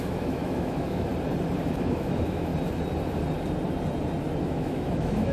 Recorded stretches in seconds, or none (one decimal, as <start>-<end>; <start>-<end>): 1.1-1.7; 2.5-4.4